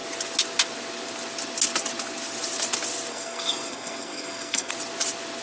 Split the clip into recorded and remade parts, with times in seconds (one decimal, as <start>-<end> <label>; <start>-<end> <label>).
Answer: 0.0-3.1 recorded; 3.1-4.7 remade; 4.7-5.4 recorded